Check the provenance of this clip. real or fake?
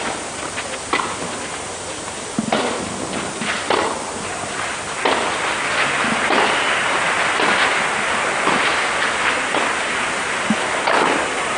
real